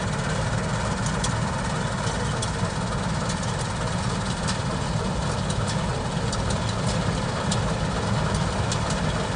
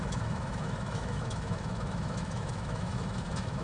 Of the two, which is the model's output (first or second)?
second